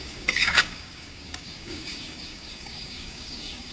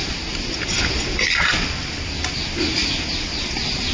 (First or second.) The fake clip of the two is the first